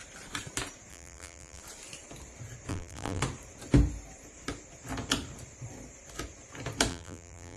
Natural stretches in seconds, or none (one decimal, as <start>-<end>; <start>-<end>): 0.0-0.9; 1.6-2.7; 3.2-6.9